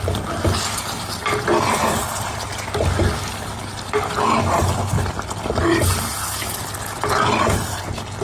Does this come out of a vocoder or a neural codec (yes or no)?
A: no